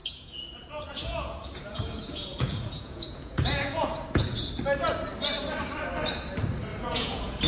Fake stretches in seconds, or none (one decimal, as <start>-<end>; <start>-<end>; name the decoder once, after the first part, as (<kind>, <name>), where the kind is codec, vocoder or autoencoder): 0.0-4.5 (vocoder, Vocos); 6.7-7.5